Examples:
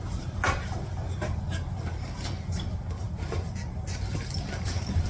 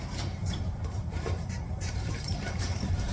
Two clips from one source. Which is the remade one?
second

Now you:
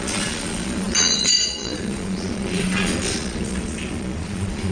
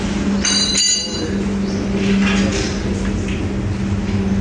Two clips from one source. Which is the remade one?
first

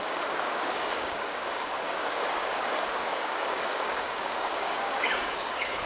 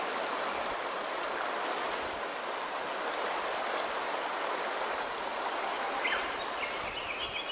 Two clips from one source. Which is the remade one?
first